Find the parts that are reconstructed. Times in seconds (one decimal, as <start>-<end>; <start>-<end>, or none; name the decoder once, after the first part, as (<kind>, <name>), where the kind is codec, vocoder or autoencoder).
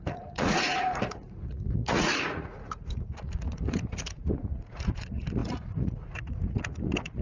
0.0-7.2 (vocoder, Vocos)